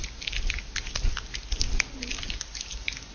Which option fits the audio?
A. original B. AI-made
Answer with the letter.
A